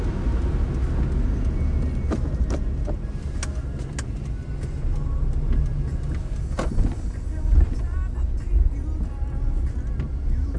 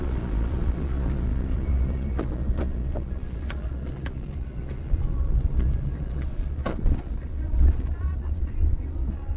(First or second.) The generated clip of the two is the second